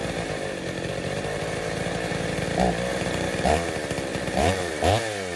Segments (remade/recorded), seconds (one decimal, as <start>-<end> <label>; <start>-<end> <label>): 0.0-2.4 remade; 2.4-2.9 recorded; 2.9-3.5 remade; 3.5-4.1 recorded; 4.1-4.7 remade; 4.7-5.4 recorded